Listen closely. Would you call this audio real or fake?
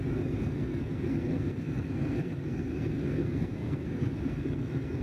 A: fake